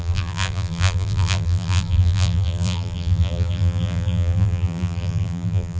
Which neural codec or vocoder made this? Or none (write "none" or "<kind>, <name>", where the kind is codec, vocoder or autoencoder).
vocoder, BigVGAN v2